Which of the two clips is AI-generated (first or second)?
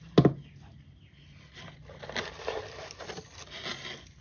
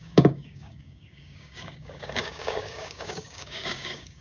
second